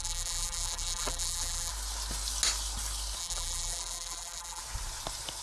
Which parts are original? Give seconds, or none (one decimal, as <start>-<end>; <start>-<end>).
1.7-3.2; 4.6-5.4

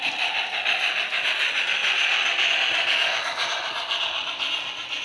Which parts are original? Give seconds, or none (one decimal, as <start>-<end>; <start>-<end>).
0.0-5.0

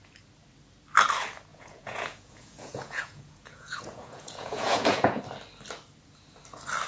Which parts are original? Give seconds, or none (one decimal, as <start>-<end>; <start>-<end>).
0.0-1.5; 5.2-6.9

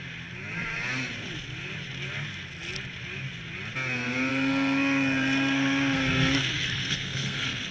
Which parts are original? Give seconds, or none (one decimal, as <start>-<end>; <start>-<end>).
0.0-4.3

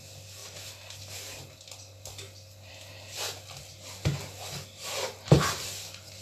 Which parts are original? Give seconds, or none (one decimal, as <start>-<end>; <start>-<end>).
0.0-6.2

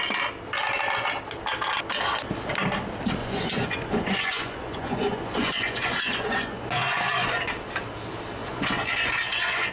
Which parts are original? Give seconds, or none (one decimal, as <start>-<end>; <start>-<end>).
0.0-3.2; 7.5-8.4